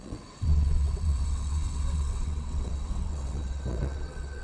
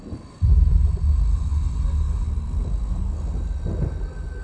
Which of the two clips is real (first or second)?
second